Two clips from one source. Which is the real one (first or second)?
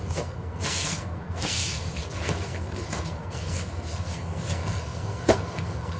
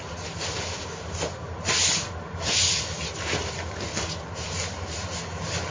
second